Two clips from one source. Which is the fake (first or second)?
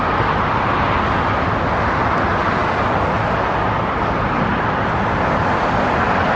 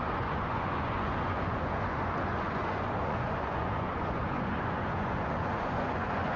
second